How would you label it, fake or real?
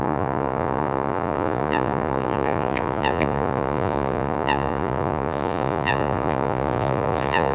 fake